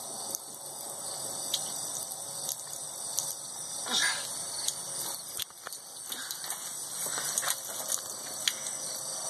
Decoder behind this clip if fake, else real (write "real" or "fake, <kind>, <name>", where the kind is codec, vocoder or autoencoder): real